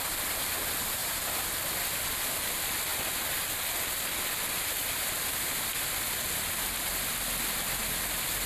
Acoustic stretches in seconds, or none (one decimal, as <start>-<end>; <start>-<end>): 0.0-1.0; 1.5-8.5